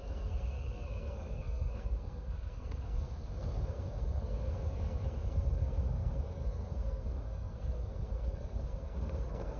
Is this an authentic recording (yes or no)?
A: no